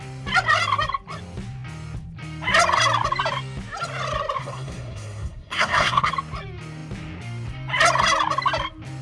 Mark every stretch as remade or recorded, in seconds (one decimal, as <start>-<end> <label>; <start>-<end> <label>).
0.0-4.4 recorded; 4.4-6.1 remade; 6.1-9.0 recorded